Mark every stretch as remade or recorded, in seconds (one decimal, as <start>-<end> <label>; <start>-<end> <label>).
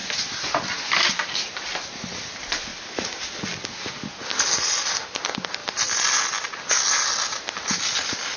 0.0-8.4 recorded